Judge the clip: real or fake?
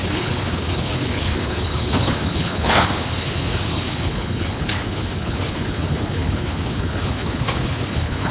fake